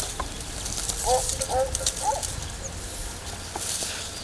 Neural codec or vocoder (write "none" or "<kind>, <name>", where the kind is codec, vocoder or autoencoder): none